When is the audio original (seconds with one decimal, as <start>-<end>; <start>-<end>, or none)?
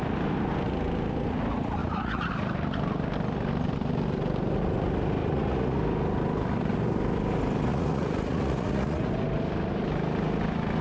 0.0-1.8; 2.3-5.2; 5.8-7.7; 9.1-10.8